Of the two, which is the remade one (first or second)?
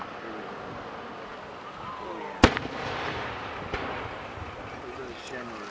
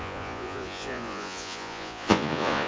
second